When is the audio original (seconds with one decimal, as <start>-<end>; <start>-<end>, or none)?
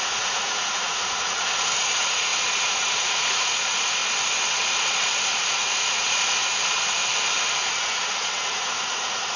4.0-4.5; 6.4-7.7